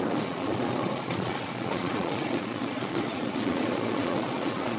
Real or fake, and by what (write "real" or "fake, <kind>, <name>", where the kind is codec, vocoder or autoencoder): fake, vocoder, Vocos